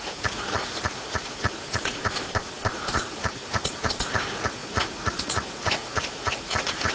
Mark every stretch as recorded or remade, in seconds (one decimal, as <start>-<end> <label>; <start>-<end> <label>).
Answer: 0.0-2.0 remade; 2.0-2.7 recorded; 2.7-6.9 remade